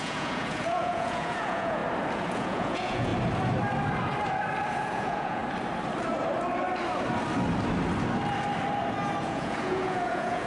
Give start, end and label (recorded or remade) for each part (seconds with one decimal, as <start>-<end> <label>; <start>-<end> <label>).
0.0-1.8 remade; 1.8-2.3 recorded; 2.3-3.1 remade; 3.1-4.7 recorded; 4.7-5.4 remade; 5.4-9.2 recorded; 9.2-10.5 remade